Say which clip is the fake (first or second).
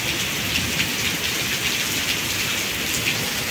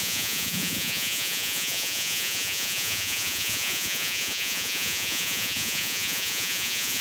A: second